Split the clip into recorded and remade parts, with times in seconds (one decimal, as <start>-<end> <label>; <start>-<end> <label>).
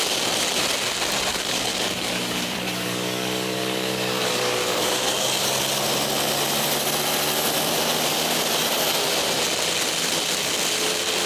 0.0-1.3 recorded; 1.3-5.6 remade; 5.6-11.3 recorded